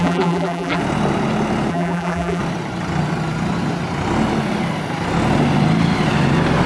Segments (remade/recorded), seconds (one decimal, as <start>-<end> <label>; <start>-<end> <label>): 0.0-0.8 remade; 0.8-1.7 recorded; 1.7-2.4 remade; 2.4-6.7 recorded